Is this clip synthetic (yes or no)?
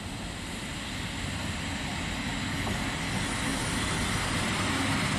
no